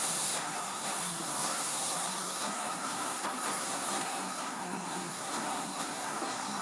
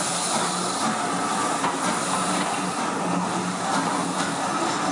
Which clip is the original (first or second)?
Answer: second